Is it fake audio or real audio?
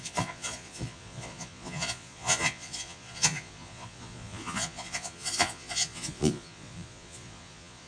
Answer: fake